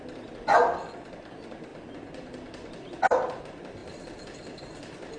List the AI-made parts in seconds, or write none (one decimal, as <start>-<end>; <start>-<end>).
3.8-4.6